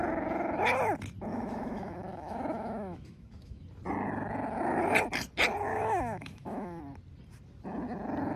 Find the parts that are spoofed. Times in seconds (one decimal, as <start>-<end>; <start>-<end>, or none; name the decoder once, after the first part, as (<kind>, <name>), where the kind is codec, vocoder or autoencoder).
1.3-3.6 (autoencoder, DAC-VAE); 5.7-6.8